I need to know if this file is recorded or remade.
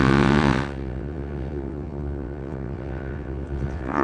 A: remade